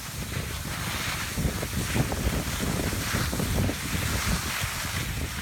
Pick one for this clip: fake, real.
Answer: real